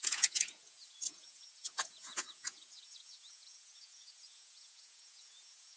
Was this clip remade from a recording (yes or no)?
yes